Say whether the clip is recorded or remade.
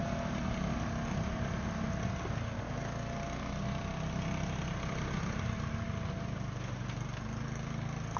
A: recorded